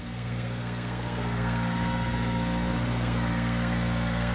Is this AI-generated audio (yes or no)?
yes